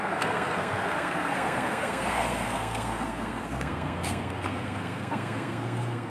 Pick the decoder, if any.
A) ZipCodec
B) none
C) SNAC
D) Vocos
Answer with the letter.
C